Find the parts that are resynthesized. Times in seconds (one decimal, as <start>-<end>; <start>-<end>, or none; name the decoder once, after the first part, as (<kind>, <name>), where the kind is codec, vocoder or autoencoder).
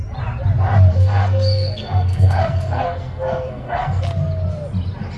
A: 0.9-4.0 (codec, SNAC)